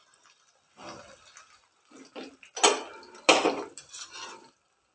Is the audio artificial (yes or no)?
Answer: no